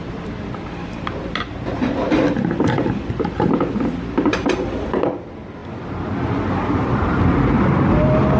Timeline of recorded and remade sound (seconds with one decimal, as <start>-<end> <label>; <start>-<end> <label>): 0.0-8.4 recorded